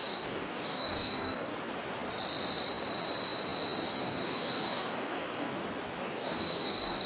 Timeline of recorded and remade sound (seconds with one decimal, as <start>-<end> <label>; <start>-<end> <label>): 0.0-1.5 remade; 1.5-4.0 recorded; 4.0-5.5 remade; 5.5-6.0 recorded; 6.0-7.1 remade